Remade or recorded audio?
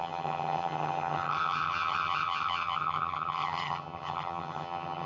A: remade